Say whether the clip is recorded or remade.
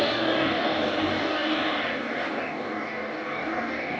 remade